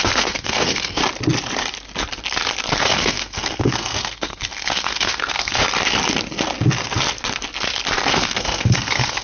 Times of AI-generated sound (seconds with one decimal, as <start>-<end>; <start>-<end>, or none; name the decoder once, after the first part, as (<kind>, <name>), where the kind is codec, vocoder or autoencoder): 0.0-1.0 (codec, SNAC); 2.8-5.6; 8.1-9.2